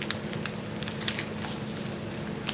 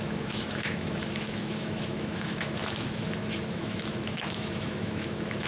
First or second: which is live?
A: first